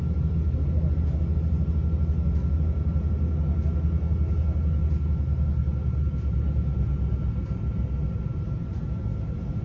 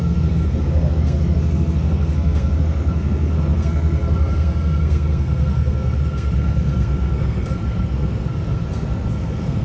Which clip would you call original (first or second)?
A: first